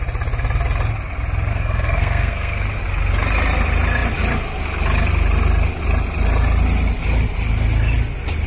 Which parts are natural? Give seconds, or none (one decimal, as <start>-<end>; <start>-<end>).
0.0-1.5; 2.6-8.5